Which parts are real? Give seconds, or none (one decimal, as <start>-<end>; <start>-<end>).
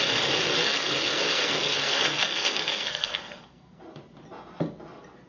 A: 0.0-0.6; 3.8-5.3